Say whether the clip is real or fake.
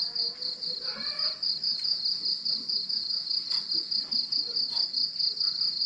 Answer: real